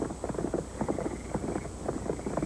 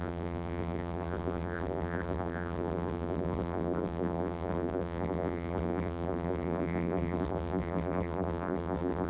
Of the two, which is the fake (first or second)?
second